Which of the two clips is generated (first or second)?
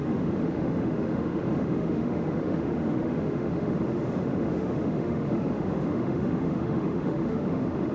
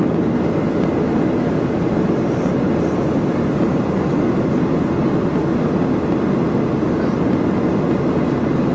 first